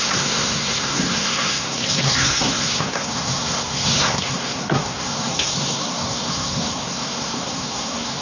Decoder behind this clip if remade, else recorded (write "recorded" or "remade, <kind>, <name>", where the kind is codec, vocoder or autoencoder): remade, codec, SNAC